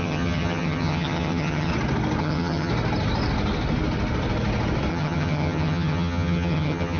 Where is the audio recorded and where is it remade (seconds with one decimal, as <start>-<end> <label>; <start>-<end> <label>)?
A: 0.0-1.7 remade; 1.7-2.2 recorded; 2.2-2.7 remade; 2.7-4.9 recorded; 4.9-7.0 remade